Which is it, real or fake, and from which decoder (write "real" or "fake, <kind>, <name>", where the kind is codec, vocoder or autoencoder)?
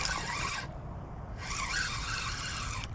fake, vocoder, BigVGAN v2